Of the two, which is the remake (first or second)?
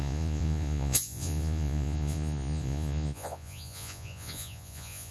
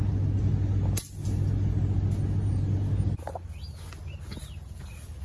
first